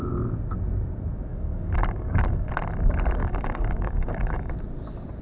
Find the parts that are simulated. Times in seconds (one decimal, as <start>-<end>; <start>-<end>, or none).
1.3-2.5; 3.2-4.5